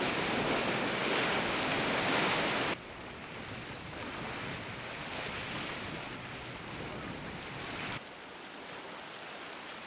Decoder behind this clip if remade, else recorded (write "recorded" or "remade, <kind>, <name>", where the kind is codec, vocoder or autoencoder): recorded